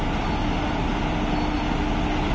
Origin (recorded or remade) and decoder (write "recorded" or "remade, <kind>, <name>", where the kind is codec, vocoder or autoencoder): recorded